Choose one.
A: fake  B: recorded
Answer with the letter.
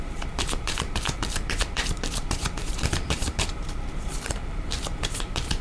A